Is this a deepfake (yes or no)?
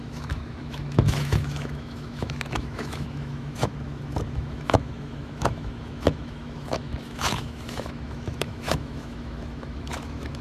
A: yes